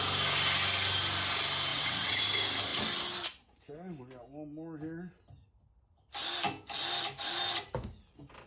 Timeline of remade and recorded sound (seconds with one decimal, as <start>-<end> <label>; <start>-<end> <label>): 0.0-1.7 recorded; 1.7-2.2 remade; 2.2-8.5 recorded